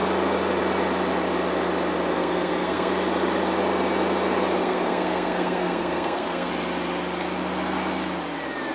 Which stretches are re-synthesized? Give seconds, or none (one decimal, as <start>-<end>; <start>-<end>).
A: 2.1-2.9; 4.6-6.5